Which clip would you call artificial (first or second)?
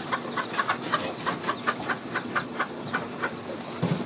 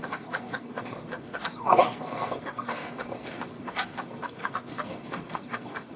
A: second